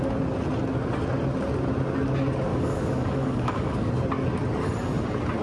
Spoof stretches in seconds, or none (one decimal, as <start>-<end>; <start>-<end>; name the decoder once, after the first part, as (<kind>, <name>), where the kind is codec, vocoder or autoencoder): 2.5-3.9 (codec, DAC)